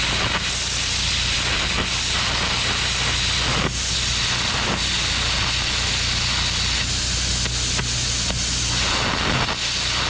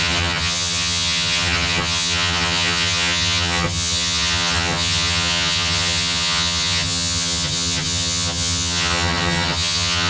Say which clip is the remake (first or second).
second